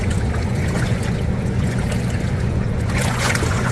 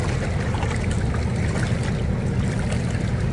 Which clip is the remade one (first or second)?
first